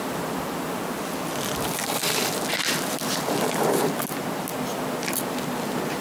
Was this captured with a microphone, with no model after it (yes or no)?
yes